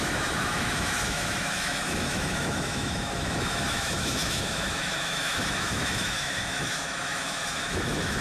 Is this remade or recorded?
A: remade